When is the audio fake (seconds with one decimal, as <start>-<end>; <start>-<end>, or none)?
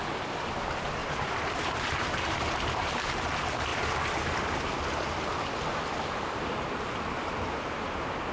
1.0-3.2